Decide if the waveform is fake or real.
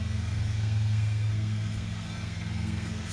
fake